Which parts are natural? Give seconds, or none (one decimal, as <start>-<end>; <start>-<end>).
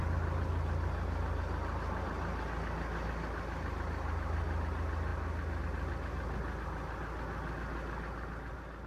0.0-8.9